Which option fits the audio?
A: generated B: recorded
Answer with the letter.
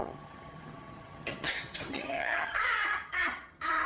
A